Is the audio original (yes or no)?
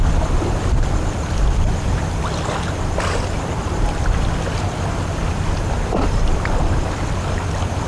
yes